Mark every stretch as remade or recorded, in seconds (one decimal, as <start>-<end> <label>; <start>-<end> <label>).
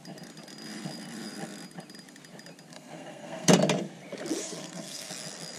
0.0-2.7 recorded; 2.7-3.6 remade; 3.6-4.4 recorded; 4.4-5.1 remade; 5.1-5.6 recorded